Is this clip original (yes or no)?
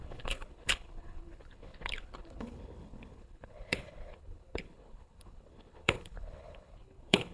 no